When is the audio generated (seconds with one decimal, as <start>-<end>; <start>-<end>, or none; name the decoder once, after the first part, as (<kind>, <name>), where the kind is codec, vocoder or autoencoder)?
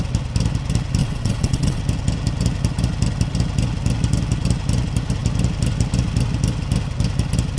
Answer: 1.0-1.8 (vocoder, WaveNeXt)